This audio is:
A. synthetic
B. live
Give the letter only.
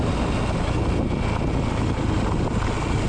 B